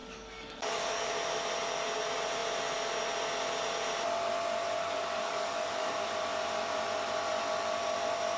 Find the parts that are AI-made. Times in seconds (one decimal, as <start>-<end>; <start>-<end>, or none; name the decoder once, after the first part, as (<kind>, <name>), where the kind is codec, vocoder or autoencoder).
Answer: 0.0-1.1 (codec, DAC); 4.8-6.0